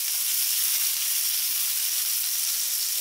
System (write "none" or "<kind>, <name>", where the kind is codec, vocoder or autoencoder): none